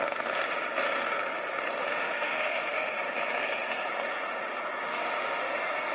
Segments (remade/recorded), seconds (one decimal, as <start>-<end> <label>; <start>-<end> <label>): 0.0-1.8 recorded; 1.8-2.9 remade; 2.9-4.8 recorded; 4.8-5.4 remade; 5.4-5.9 recorded